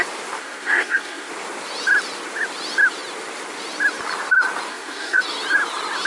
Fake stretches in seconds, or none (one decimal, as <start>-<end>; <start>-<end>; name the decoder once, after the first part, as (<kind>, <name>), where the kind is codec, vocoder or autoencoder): 0.4-1.3 (codec, SNAC); 4.7-5.2